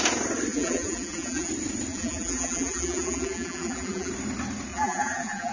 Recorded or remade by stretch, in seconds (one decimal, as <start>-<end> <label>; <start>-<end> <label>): 0.0-0.5 recorded; 0.5-1.5 remade; 1.5-1.9 recorded; 1.9-4.1 remade; 4.1-4.7 recorded; 4.7-5.5 remade